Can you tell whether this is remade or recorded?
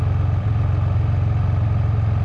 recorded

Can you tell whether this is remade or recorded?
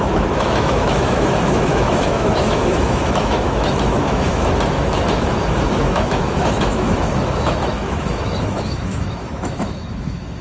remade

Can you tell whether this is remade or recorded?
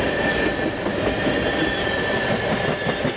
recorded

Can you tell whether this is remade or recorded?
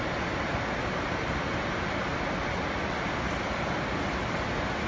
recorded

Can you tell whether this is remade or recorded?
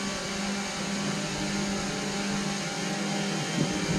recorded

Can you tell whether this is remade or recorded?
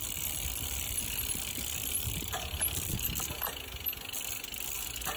recorded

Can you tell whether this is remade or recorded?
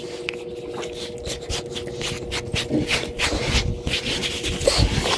recorded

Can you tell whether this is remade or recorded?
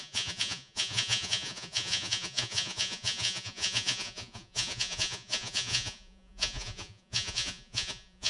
remade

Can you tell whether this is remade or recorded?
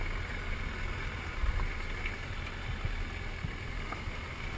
recorded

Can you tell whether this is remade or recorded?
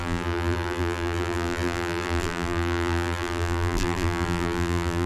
remade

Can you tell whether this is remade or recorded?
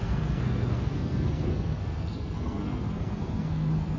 remade